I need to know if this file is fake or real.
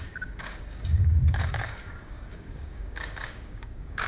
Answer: fake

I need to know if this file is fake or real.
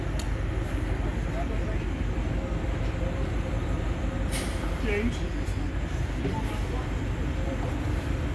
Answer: real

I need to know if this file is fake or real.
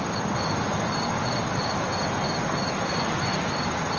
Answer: real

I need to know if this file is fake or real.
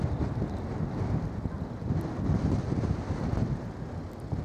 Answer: real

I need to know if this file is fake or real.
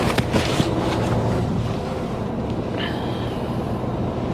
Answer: real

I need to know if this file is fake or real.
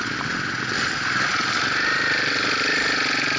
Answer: real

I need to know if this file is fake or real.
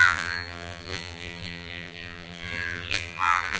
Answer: fake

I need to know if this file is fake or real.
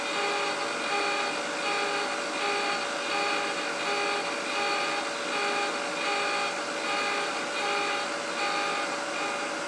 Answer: real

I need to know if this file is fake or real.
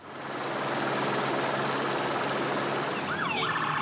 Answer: real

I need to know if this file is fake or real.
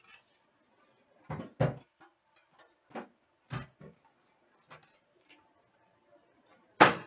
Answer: real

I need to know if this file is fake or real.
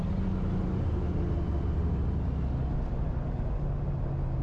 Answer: real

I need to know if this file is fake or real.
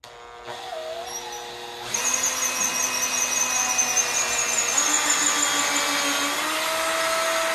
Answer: real